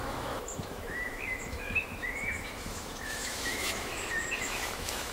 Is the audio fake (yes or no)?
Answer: yes